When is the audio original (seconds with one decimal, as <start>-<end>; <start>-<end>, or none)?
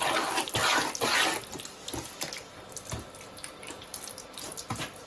0.0-5.1